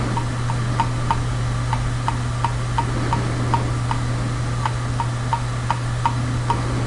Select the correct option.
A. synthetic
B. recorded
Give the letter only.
B